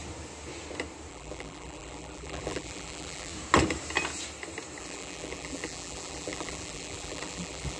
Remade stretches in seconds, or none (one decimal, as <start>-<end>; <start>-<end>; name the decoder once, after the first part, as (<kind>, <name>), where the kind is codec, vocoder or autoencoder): 1.1-3.3 (vocoder, BigVGAN v2); 4.8-7.8